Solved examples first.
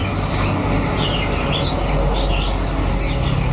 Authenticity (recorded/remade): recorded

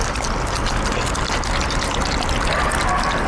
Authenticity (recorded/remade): recorded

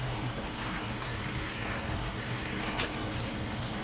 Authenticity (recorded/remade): remade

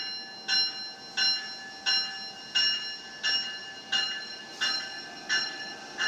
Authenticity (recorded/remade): recorded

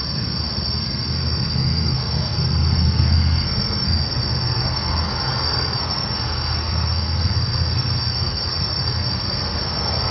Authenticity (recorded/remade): remade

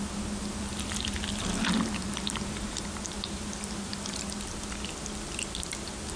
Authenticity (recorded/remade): recorded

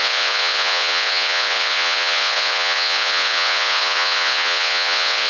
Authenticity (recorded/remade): remade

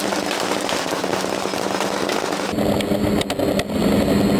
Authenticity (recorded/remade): recorded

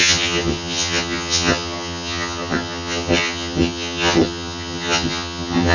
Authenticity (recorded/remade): remade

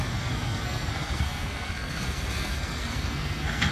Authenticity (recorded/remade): remade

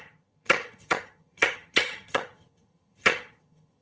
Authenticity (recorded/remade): remade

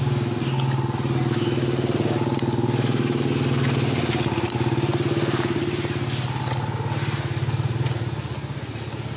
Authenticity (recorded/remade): recorded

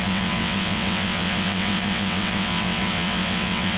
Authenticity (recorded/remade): remade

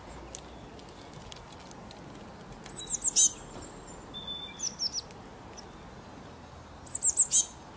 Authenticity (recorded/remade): recorded